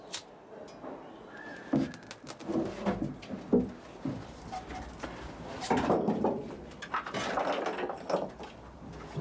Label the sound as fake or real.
real